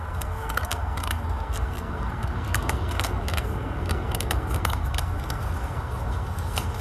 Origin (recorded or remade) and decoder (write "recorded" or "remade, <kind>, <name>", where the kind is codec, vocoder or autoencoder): remade, codec, SNAC